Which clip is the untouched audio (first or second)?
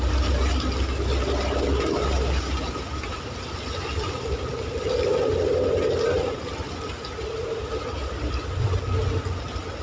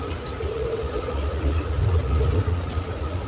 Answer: first